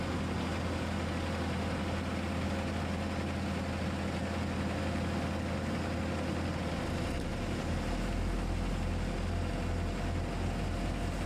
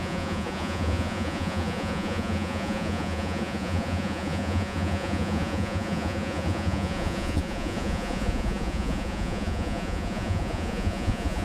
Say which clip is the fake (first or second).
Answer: second